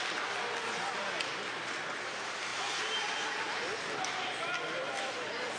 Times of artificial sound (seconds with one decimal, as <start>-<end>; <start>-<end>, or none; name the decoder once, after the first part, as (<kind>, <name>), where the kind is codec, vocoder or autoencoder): none